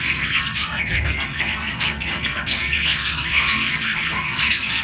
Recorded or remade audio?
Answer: remade